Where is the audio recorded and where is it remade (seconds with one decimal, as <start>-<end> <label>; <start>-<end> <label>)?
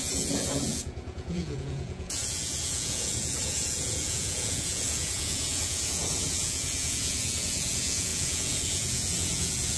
0.0-9.8 remade